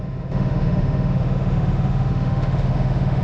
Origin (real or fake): fake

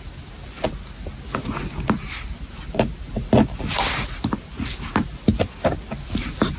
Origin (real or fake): real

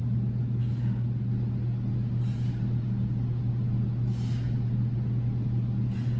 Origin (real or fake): real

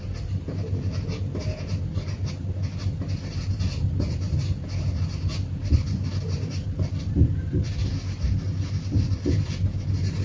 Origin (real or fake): real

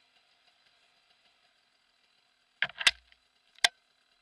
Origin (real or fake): real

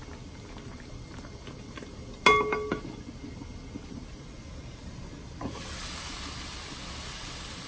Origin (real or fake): real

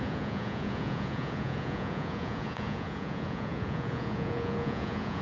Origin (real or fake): fake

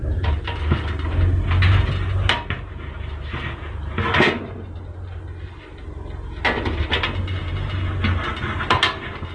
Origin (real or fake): real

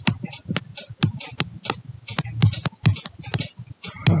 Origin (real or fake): real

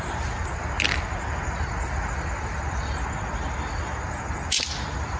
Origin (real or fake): real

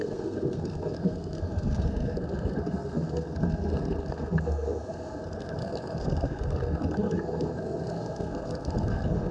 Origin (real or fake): fake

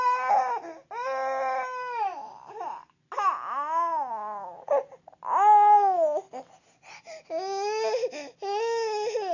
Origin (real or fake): real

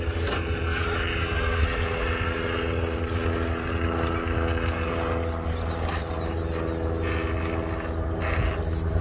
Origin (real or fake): real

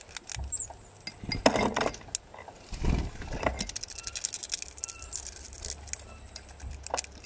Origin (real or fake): real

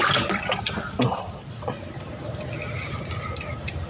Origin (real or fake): real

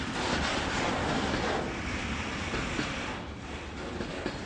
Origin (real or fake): real